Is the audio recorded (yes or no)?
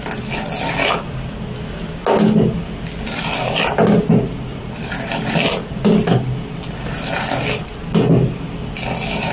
yes